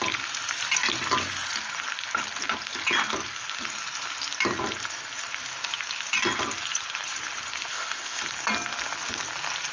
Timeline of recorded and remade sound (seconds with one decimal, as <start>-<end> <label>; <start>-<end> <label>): 0.0-7.7 recorded; 7.7-8.2 remade; 8.2-9.7 recorded